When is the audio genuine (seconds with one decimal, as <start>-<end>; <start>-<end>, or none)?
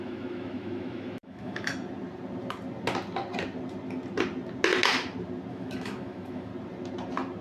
1.7-5.5; 6.5-7.4